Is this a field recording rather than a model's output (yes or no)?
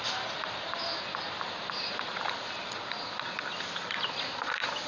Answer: yes